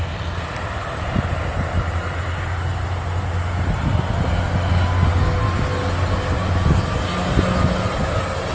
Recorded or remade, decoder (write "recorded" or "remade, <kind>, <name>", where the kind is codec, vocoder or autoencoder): recorded